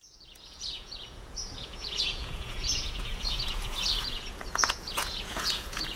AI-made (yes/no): yes